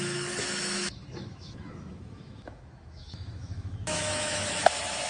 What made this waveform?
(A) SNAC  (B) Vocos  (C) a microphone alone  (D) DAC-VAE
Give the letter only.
D